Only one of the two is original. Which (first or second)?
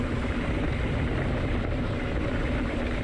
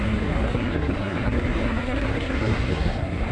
first